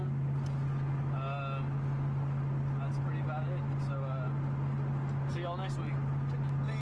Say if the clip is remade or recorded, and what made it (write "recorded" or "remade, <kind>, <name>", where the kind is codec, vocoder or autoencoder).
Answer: recorded